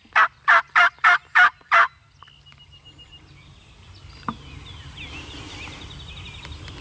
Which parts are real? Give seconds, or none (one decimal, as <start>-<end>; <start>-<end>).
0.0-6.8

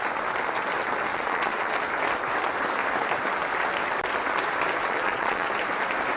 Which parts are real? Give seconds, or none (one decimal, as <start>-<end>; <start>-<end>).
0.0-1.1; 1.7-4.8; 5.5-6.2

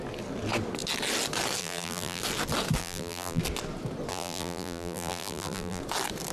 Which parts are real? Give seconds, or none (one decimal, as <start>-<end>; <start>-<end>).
0.0-1.6; 2.2-2.8; 3.4-4.1; 5.8-6.3

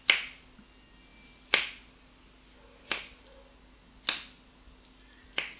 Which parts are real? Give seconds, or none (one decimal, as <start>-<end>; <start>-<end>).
0.0-5.6

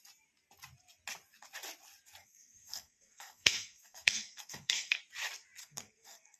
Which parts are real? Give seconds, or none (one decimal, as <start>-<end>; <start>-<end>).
0.0-2.2; 5.0-5.6

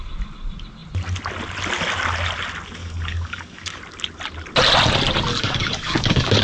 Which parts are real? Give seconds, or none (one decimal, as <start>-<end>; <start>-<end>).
0.0-2.8; 3.8-5.3

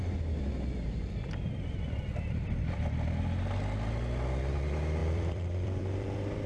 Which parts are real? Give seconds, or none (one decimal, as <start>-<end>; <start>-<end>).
0.0-5.0

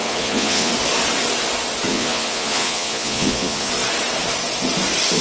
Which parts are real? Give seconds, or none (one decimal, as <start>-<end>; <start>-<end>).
0.7-1.9; 3.7-5.2